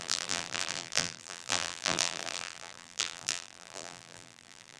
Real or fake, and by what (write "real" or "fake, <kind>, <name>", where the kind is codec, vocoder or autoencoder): fake, vocoder, BigVGAN v2